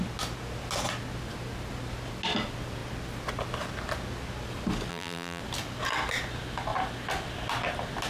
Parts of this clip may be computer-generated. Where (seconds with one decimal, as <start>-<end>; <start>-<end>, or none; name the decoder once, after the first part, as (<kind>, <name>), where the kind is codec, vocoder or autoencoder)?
4.9-5.4 (vocoder, BigVGAN v2)